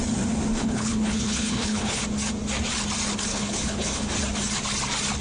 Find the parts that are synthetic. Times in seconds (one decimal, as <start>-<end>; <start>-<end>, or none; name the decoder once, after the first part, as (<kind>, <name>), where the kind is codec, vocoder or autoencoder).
0.6-2.0 (codec, HILCodec); 3.3-4.1